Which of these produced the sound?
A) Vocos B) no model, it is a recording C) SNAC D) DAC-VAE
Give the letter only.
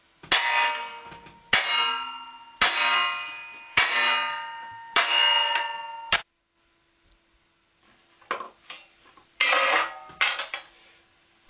B